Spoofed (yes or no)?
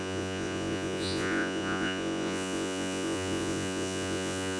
yes